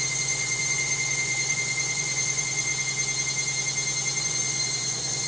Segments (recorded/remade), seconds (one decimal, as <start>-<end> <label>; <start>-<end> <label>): 0.0-2.7 remade; 2.7-4.2 recorded; 4.2-5.3 remade